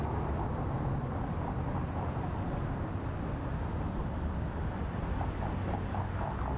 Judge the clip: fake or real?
real